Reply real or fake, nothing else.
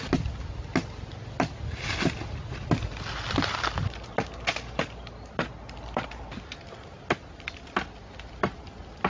real